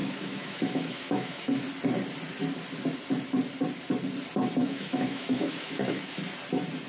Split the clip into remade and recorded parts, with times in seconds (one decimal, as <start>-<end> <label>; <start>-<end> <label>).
0.0-1.5 remade; 1.5-4.6 recorded; 4.6-6.1 remade; 6.1-6.9 recorded